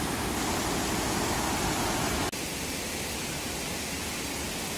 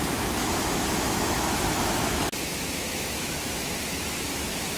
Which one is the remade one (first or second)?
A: second